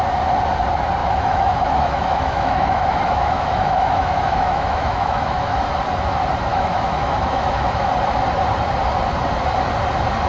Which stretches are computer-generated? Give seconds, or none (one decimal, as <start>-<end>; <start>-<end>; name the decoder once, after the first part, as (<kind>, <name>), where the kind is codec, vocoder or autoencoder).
1.0-5.7 (autoencoder, DAC-VAE); 6.5-7.9